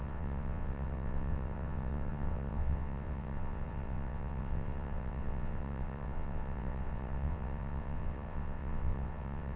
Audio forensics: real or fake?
fake